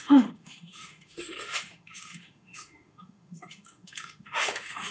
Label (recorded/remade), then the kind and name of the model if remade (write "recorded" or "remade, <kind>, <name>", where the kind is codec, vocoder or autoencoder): remade, autoencoder, DAC-VAE